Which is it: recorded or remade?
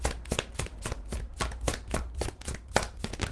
recorded